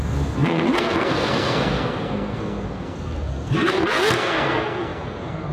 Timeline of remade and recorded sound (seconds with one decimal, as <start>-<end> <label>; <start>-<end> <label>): 0.0-5.5 remade